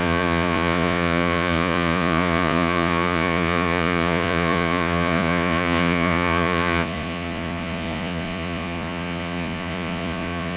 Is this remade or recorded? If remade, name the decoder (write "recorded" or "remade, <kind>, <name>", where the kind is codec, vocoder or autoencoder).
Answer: remade, vocoder, Vocos